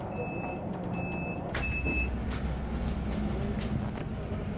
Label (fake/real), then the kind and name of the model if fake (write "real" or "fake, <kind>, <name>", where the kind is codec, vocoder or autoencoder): real